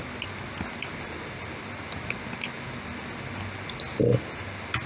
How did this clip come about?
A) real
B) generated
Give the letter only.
A